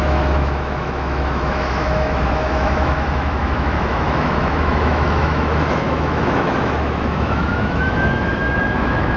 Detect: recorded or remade remade